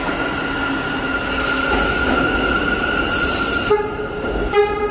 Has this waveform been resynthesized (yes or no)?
no